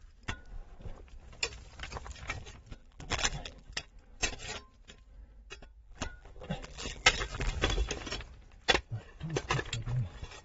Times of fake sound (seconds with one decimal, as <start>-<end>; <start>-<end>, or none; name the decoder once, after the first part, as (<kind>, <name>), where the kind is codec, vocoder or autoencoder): 2.8-3.9 (vocoder, BigVGAN v2); 5.8-7.5